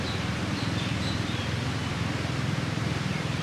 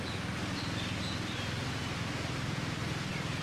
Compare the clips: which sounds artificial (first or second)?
first